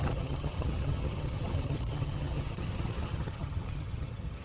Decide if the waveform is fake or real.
fake